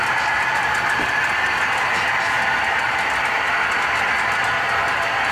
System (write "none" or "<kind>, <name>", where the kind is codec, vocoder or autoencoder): none